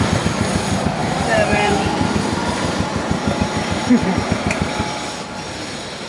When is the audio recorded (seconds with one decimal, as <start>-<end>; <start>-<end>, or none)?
0.0-1.0; 4.7-6.1